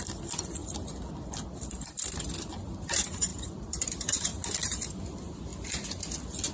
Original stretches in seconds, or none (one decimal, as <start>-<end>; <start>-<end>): 0.6-1.1; 4.3-5.0; 5.5-6.5

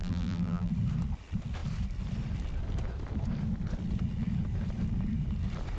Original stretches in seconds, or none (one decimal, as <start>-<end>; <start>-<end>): 0.7-5.8

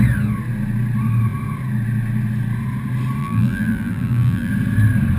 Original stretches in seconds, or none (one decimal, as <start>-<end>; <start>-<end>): 0.0-3.2; 4.5-5.2

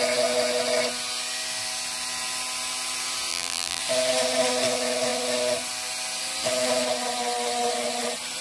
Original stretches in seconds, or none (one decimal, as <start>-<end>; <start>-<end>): 0.0-3.3; 3.8-8.4